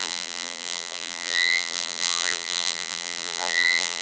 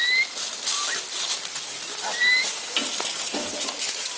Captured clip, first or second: second